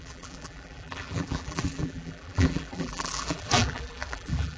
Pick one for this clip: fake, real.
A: fake